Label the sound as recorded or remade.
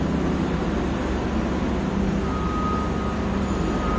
recorded